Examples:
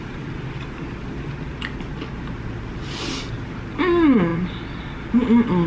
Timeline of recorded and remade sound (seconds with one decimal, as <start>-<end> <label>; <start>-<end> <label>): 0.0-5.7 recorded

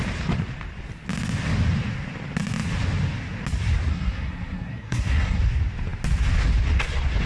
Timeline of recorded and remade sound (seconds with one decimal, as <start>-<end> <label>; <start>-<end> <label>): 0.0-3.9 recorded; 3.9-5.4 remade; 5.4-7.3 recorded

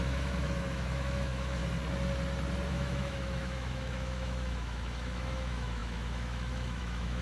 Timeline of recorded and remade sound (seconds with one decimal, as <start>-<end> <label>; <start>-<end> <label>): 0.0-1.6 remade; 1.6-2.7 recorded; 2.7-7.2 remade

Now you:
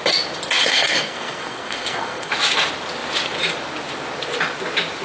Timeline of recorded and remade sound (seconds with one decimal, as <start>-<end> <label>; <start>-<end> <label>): 0.0-0.6 recorded; 0.6-2.3 remade; 2.3-5.0 recorded

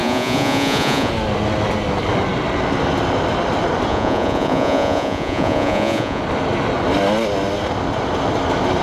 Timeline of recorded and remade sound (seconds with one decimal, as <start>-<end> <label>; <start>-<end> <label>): 0.0-1.1 remade; 1.1-3.9 recorded; 3.9-6.2 remade; 6.2-8.8 recorded